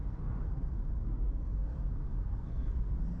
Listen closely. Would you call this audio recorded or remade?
remade